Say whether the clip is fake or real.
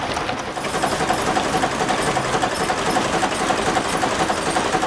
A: real